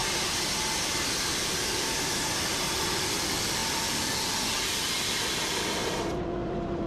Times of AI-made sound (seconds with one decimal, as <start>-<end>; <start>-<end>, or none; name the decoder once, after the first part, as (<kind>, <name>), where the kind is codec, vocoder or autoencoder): 0.0-2.7 (vocoder, BigVGAN v2); 5.8-6.9

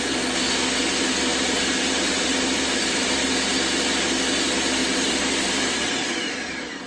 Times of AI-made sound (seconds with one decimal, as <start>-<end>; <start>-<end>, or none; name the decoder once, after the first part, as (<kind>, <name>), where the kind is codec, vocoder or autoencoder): 1.3-3.3 (vocoder, BigVGAN v2); 4.8-6.9

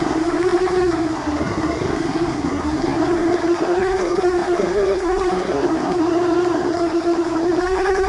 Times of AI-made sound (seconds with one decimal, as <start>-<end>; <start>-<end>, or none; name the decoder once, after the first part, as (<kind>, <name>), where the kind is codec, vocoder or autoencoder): 0.0-8.1 (codec, SNAC)